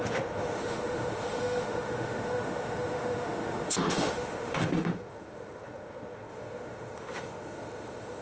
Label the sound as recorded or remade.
remade